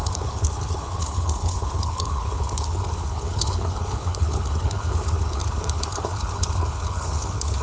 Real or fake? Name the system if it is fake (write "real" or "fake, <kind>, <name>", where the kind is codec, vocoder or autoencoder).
fake, codec, HILCodec